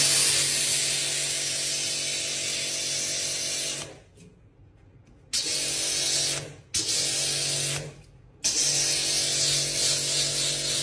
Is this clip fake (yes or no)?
no